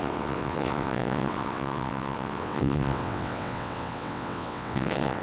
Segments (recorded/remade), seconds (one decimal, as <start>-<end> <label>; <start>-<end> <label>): 0.0-5.2 remade